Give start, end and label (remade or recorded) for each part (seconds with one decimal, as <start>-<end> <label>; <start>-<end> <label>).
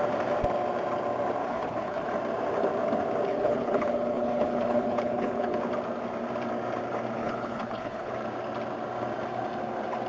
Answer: 0.0-1.4 recorded; 1.4-2.1 remade; 2.1-3.3 recorded; 3.3-5.6 remade; 5.6-7.2 recorded; 7.2-8.1 remade; 8.1-10.1 recorded